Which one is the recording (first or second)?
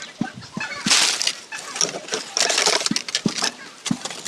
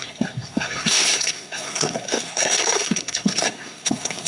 first